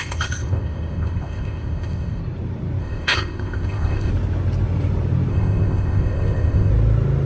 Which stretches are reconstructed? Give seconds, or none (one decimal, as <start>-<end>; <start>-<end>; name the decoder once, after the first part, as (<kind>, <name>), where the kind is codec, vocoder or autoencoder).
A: 0.0-2.2 (codec, ZipCodec); 2.8-4.1; 5.3-6.7